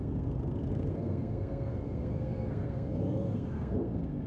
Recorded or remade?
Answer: remade